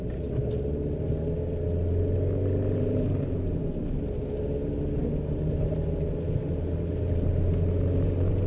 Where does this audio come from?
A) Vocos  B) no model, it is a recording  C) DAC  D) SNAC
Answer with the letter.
B